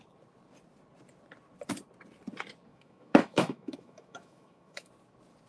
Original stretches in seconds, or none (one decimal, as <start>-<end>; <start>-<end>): 0.0-2.7; 4.9-5.5